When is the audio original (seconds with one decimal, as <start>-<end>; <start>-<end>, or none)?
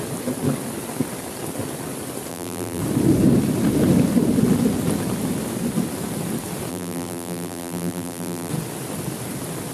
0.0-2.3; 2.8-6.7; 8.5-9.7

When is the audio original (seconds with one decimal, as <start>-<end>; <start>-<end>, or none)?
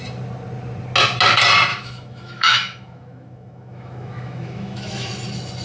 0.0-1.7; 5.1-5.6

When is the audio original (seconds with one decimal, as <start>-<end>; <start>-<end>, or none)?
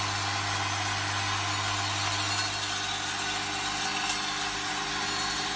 0.0-5.6